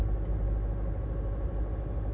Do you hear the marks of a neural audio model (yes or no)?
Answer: no